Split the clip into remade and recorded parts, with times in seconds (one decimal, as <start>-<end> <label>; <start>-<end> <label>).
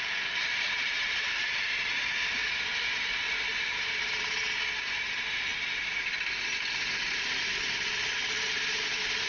0.0-9.3 recorded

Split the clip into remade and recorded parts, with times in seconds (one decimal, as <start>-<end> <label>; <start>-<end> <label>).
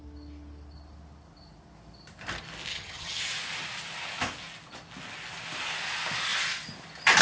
0.0-2.7 recorded; 2.7-3.2 remade; 3.2-7.2 recorded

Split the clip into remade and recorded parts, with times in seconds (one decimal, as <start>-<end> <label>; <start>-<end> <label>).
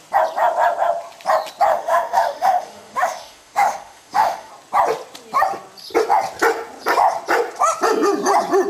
0.0-1.7 recorded; 1.7-4.5 remade; 4.5-8.7 recorded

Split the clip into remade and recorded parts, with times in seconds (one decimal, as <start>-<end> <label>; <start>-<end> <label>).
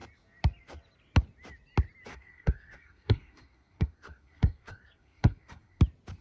0.0-2.1 recorded; 2.1-5.8 remade; 5.8-6.2 recorded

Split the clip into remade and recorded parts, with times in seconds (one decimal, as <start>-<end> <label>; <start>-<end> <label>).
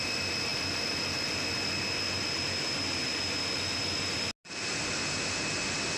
0.0-6.0 recorded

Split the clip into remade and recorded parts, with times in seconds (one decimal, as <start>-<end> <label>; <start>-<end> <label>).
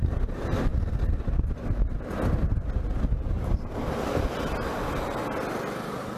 0.0-6.2 recorded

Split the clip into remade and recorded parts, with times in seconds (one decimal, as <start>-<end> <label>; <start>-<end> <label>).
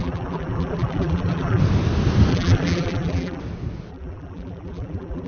0.0-1.6 remade; 1.6-2.3 recorded; 2.3-3.4 remade; 3.4-3.9 recorded; 3.9-5.3 remade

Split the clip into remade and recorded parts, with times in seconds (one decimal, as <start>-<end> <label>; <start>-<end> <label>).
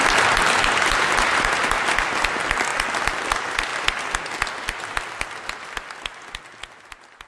0.0-7.3 recorded